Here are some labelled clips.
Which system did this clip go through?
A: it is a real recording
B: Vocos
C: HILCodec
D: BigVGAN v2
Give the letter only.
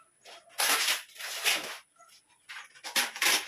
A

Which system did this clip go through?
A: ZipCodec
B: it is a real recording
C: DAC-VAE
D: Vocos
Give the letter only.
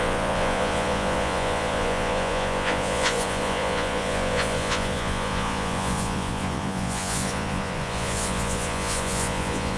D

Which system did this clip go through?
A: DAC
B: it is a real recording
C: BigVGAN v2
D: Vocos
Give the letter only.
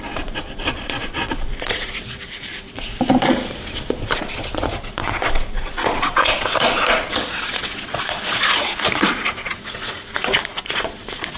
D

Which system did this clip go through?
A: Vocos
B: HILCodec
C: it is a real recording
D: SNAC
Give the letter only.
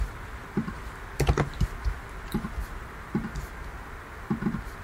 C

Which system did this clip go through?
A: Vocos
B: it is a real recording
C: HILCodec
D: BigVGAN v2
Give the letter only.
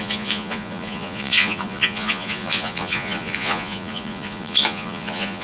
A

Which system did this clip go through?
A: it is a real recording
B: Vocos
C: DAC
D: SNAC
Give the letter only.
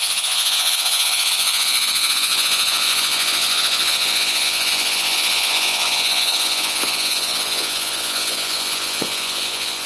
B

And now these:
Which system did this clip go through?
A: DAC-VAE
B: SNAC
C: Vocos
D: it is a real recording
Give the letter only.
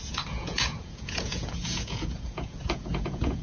C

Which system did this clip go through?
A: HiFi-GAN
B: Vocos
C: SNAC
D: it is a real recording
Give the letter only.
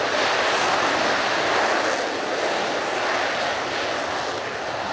D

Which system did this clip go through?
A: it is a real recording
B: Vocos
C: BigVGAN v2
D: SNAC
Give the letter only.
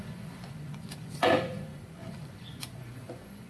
B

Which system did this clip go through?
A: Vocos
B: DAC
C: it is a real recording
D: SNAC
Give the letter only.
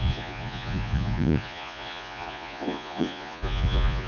A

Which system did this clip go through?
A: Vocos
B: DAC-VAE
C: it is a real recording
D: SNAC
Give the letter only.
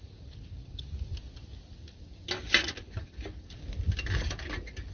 C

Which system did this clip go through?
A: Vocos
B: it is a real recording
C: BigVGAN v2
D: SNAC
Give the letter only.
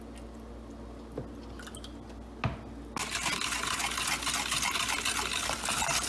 B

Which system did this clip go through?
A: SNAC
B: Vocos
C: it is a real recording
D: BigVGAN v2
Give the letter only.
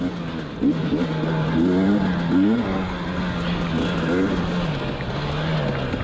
C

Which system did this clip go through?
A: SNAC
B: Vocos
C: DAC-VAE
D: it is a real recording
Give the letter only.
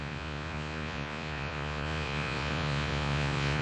B